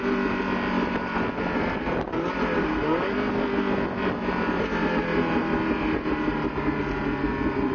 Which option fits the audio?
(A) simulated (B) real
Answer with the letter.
B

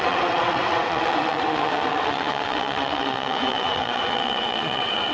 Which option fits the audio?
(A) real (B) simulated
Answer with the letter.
B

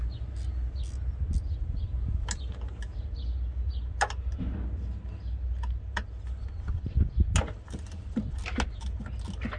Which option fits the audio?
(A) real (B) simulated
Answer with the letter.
A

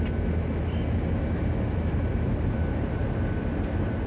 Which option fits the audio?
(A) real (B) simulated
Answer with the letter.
A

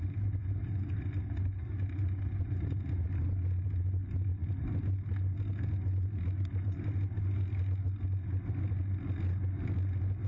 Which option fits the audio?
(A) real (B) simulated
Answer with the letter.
A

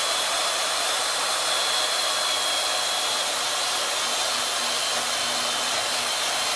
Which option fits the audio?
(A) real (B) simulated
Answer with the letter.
A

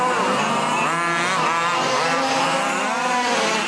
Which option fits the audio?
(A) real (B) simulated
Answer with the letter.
A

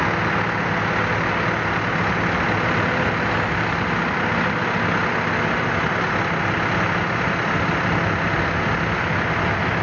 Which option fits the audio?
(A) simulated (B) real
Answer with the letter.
B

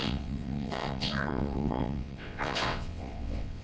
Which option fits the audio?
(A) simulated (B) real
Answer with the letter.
A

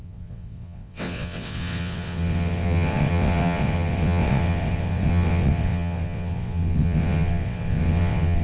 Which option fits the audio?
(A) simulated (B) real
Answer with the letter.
A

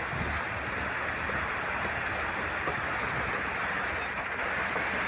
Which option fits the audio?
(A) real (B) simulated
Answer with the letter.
A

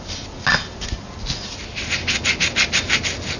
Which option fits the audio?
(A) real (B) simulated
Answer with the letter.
A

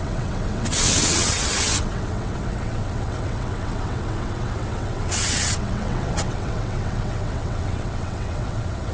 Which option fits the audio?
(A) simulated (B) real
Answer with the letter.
A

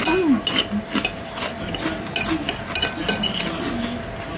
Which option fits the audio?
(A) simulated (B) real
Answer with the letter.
B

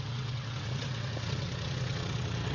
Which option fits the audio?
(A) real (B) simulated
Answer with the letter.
B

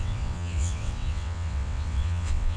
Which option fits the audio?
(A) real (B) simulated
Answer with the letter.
B